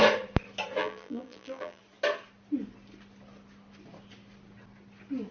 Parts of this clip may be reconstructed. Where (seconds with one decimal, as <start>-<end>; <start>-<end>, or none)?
0.8-1.8